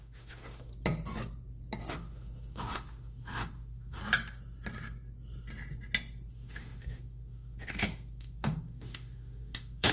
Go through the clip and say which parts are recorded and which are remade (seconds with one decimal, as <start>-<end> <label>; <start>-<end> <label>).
0.0-0.7 remade; 0.7-1.9 recorded; 1.9-4.0 remade; 4.0-6.3 recorded; 6.3-9.9 remade